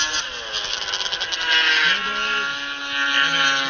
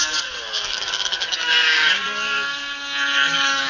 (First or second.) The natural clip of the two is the first